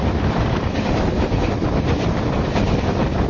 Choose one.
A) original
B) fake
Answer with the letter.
B